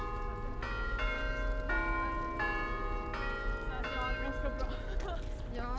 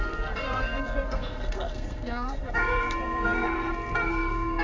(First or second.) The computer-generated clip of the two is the second